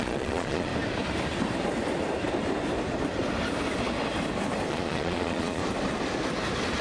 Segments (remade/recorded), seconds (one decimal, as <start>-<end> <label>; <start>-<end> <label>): 0.0-0.7 remade; 0.7-4.7 recorded; 4.7-5.6 remade; 5.6-6.8 recorded